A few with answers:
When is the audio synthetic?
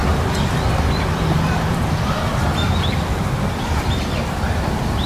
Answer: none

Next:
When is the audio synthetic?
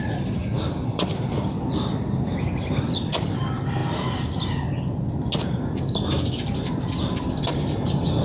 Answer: 0.4-2.8 (vocoder, BigVGAN v2)